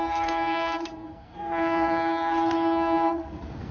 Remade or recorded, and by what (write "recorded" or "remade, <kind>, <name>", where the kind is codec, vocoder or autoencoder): remade, codec, SNAC